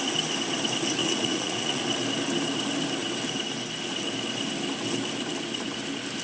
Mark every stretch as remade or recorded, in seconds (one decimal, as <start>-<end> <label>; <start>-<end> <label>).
0.0-1.0 recorded; 1.0-1.8 remade; 1.8-6.2 recorded